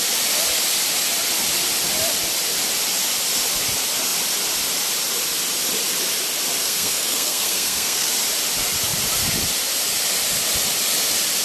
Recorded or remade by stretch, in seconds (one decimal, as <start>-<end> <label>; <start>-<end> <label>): 0.0-6.6 recorded; 6.6-8.1 remade; 8.1-11.4 recorded

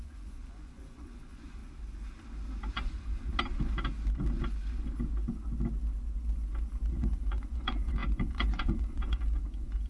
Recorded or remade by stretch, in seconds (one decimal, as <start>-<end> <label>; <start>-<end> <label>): 0.0-1.6 remade; 1.6-2.7 recorded; 2.7-3.3 remade; 3.3-6.9 recorded; 6.9-9.9 remade

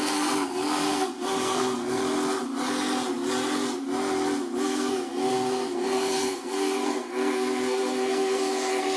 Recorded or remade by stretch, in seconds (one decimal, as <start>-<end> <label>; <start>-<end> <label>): 0.0-2.0 remade; 2.0-4.6 recorded; 4.6-9.0 remade

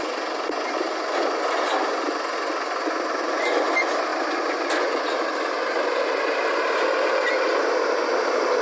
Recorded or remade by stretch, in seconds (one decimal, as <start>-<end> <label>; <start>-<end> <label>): 0.0-8.6 recorded

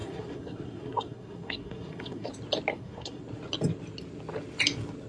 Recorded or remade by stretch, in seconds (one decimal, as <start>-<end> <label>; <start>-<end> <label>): 0.0-2.3 remade; 2.3-2.7 recorded; 2.7-3.2 remade; 3.2-5.1 recorded